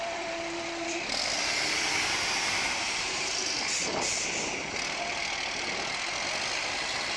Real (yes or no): no